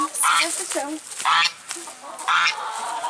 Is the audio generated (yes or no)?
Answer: no